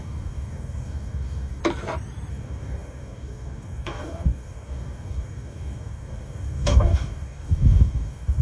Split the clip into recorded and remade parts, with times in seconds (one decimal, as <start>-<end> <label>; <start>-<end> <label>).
0.0-1.6 remade; 1.6-2.3 recorded; 2.3-8.4 remade